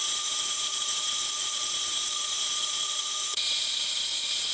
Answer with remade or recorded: remade